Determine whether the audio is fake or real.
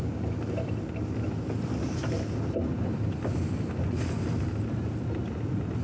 real